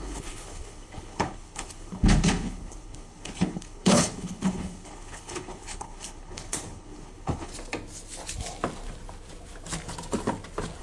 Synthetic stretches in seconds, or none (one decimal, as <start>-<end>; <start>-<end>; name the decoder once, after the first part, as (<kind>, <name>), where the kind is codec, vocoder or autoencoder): 0.0-7.5 (codec, HILCodec)